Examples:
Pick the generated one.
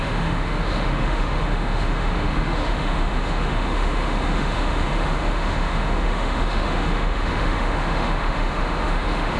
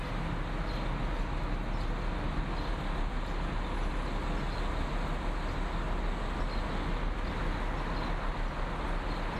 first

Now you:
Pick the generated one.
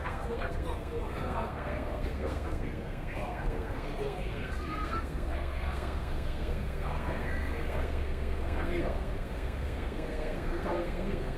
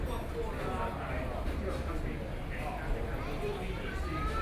first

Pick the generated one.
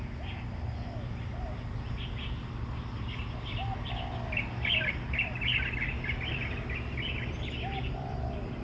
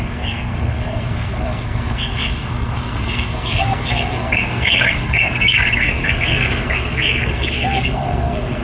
second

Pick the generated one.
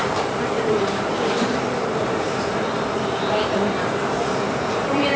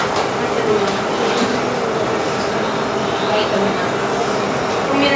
first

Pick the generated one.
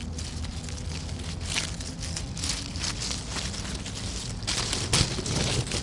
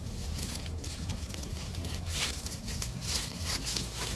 second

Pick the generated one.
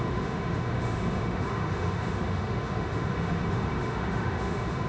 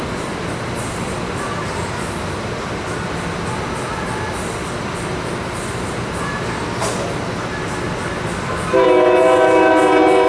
first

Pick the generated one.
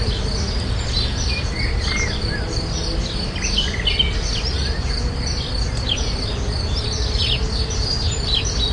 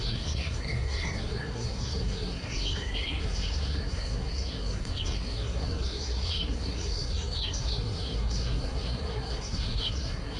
second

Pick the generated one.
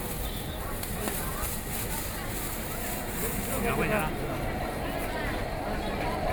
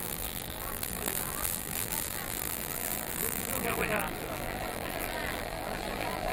second